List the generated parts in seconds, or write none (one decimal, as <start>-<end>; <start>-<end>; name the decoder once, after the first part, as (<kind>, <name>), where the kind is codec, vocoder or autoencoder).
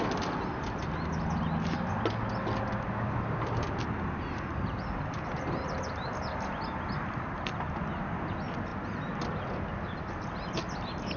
none